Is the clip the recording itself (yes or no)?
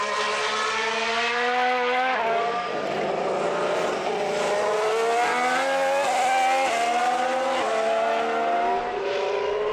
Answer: yes